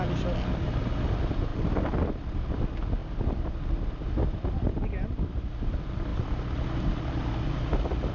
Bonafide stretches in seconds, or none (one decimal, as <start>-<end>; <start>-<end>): 0.0-8.1